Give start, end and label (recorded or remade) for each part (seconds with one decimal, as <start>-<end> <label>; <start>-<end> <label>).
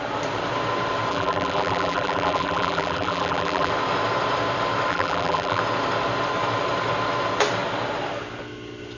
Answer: 0.0-1.1 recorded; 1.1-3.7 remade; 3.7-4.9 recorded; 4.9-5.6 remade; 5.6-9.0 recorded